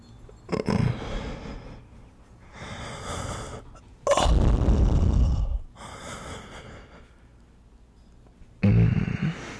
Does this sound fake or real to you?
real